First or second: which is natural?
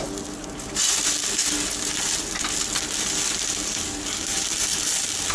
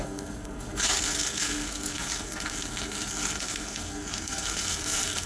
first